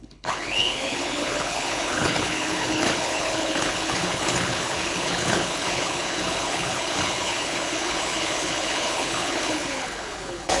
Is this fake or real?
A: fake